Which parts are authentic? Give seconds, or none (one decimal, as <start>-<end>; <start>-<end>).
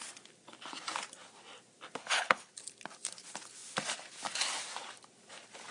0.0-2.0; 2.5-5.7